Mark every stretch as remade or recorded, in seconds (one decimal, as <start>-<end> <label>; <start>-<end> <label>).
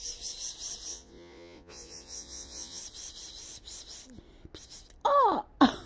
0.0-0.9 recorded; 0.9-2.8 remade; 2.8-5.9 recorded